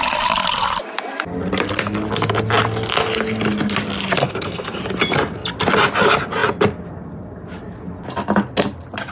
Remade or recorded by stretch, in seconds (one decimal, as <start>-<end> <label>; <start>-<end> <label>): 0.0-4.2 recorded; 4.2-4.8 remade; 4.8-9.1 recorded